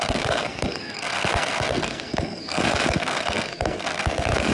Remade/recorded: remade